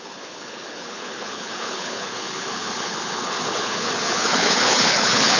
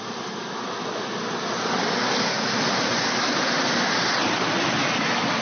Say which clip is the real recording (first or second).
second